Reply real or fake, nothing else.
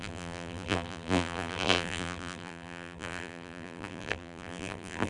fake